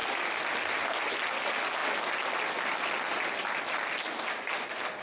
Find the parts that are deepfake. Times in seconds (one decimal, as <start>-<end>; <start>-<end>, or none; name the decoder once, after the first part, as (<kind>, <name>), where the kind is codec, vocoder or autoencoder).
none